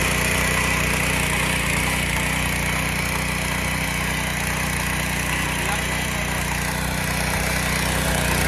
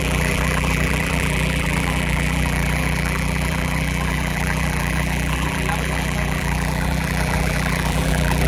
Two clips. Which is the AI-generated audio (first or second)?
second